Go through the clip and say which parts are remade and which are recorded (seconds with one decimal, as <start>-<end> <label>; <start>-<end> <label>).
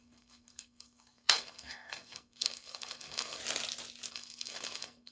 0.0-3.4 remade; 3.4-4.1 recorded; 4.1-5.1 remade